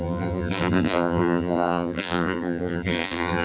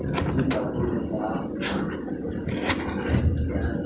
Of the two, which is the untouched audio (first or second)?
second